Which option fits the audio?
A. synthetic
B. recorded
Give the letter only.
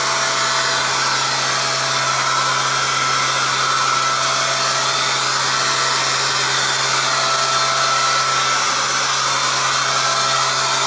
B